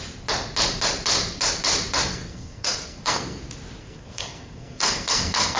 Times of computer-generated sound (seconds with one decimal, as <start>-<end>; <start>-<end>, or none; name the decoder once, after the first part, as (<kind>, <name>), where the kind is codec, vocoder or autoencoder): 2.1-3.4 (codec, SNAC); 3.8-5.6